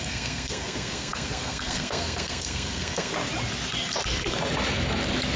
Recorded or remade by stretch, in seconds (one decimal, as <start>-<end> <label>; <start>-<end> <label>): 0.0-3.1 remade; 3.1-5.4 recorded